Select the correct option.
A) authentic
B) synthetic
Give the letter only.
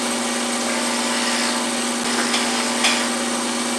A